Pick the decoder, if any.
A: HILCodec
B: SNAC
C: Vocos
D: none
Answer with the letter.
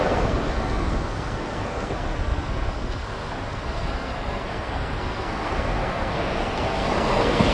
B